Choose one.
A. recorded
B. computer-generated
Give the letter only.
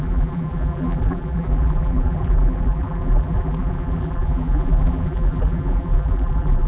B